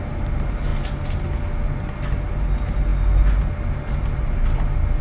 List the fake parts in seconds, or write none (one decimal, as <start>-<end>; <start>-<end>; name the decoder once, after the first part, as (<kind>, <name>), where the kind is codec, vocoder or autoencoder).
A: none